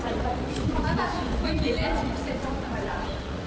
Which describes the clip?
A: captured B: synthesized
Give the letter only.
B